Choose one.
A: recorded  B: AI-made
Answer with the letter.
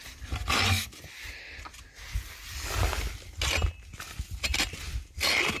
A